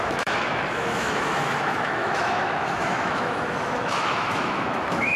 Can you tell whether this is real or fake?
fake